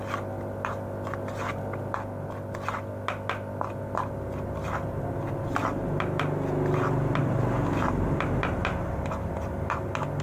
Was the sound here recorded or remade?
recorded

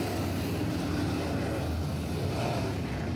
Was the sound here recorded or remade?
recorded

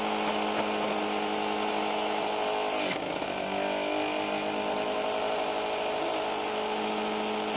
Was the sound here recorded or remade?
recorded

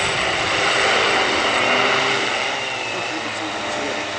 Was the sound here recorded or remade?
recorded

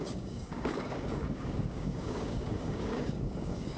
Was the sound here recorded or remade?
remade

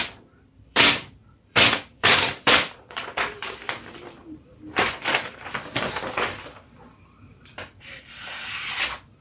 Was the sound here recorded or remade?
remade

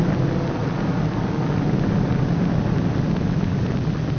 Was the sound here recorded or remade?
recorded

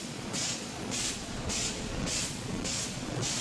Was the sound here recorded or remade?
remade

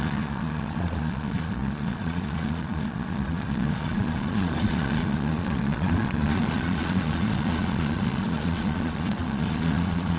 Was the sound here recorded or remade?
remade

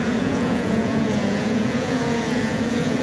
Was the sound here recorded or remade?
remade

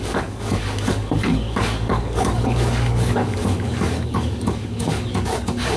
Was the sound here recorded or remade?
remade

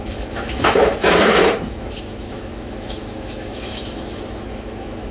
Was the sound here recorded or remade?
remade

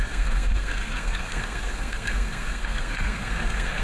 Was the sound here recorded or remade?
remade